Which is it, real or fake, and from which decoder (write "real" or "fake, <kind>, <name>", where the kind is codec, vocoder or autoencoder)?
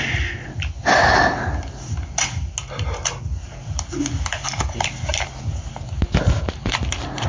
real